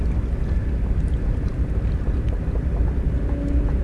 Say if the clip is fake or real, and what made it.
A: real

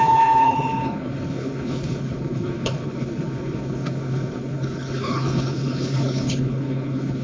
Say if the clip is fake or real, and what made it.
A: fake, codec, HILCodec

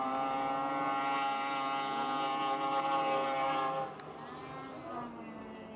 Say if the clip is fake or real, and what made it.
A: real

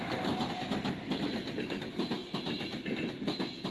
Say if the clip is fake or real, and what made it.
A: real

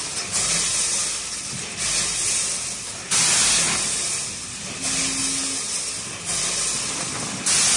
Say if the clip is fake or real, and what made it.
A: real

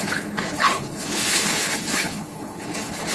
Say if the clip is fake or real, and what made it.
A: fake, codec, HILCodec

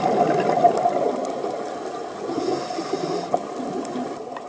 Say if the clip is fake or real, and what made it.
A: real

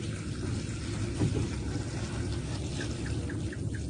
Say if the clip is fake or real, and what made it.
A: real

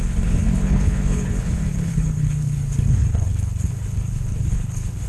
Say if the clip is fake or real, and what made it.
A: fake, codec, HILCodec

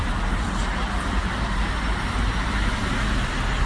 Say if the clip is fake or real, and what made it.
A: real